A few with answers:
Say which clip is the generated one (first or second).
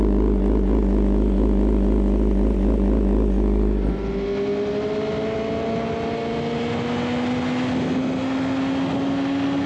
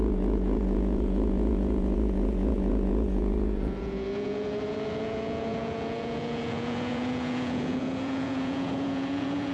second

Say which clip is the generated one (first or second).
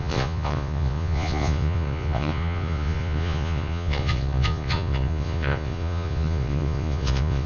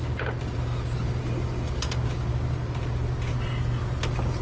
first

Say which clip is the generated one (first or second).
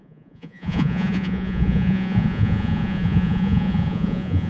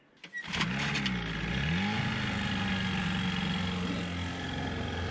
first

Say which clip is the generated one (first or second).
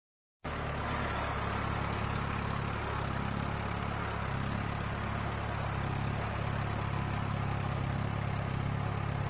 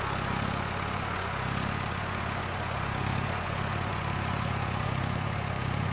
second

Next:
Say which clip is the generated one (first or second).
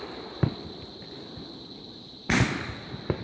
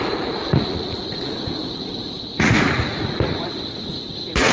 second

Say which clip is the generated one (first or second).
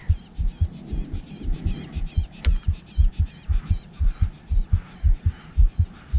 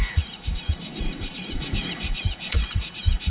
second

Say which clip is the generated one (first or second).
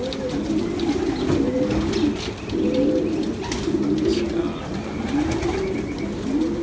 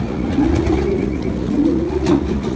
second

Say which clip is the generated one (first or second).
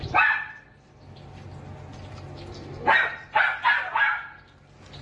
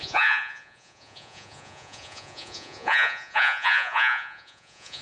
second